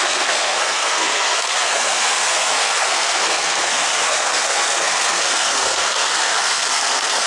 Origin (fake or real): fake